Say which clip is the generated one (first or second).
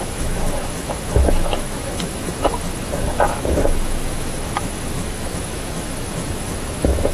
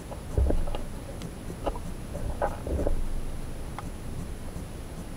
first